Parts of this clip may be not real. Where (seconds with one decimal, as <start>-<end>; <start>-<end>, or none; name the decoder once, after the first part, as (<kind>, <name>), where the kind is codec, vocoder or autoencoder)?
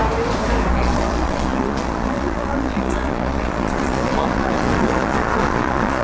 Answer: 0.7-6.0 (vocoder, Vocos)